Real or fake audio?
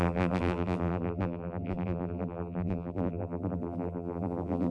fake